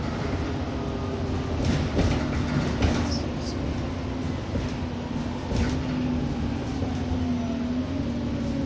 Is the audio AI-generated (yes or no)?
no